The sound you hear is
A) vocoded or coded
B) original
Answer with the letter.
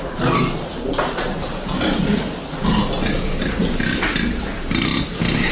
B